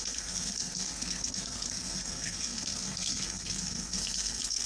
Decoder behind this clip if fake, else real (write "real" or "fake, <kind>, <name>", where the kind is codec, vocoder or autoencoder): fake, codec, SNAC